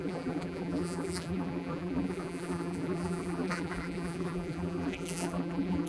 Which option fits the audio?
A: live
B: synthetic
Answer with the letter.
B